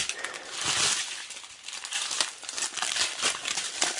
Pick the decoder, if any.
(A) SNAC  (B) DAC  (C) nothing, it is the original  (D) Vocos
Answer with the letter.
C